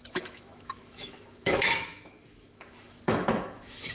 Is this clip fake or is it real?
fake